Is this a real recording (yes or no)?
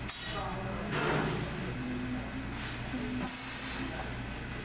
yes